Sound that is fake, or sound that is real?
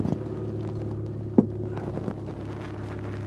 real